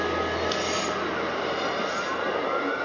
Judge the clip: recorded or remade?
recorded